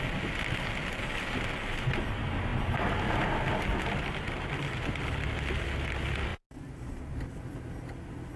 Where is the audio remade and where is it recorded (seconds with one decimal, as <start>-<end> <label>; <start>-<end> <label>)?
0.0-8.4 recorded